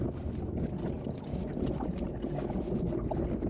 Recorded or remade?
recorded